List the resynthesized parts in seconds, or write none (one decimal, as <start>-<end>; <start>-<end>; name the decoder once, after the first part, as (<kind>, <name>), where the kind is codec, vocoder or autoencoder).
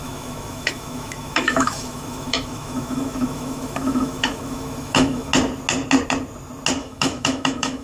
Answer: 0.0-5.3 (autoencoder, DAC-VAE); 6.8-7.8